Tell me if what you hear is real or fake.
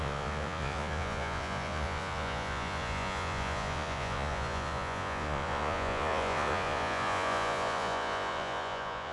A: fake